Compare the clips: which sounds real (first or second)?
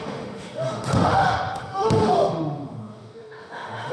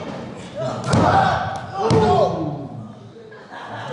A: second